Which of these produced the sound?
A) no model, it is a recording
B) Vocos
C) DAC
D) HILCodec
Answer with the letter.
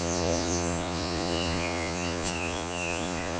B